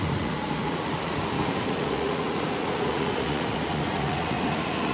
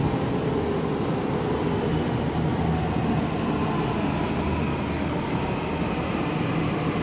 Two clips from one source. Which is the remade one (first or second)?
first